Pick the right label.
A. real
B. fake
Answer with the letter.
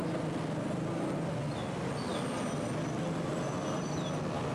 A